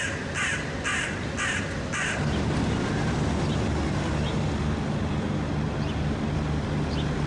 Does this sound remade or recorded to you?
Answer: recorded